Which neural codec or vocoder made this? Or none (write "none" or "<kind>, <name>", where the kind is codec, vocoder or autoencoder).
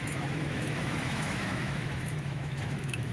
autoencoder, DAC-VAE